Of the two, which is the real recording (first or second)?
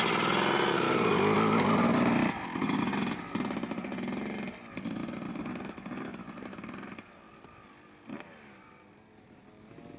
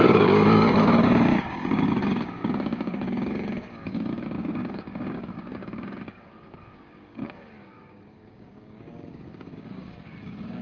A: first